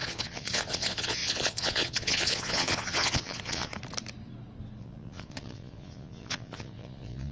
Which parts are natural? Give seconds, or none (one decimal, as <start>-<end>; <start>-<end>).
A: 3.7-4.8